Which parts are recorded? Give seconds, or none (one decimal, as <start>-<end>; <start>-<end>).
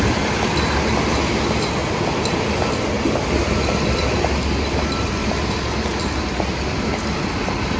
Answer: 0.0-7.8